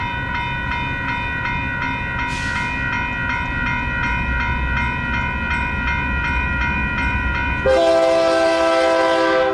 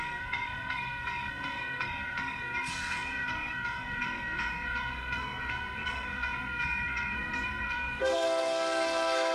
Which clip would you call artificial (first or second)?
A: second